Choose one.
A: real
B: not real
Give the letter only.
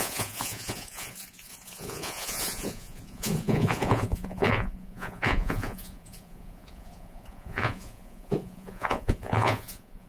B